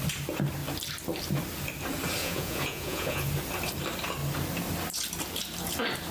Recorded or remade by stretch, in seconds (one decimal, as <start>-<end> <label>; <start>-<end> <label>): 0.0-2.2 recorded; 2.2-3.3 remade; 3.3-6.1 recorded